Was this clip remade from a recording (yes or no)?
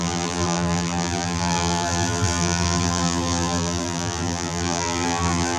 yes